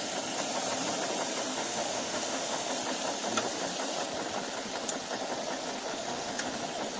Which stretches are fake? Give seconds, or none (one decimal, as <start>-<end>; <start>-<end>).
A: 1.5-2.7; 5.9-6.6